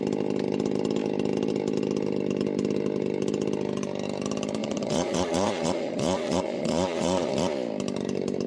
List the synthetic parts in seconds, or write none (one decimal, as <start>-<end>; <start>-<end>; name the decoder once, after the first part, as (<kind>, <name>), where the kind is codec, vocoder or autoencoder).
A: 4.6-7.3 (vocoder, Vocos)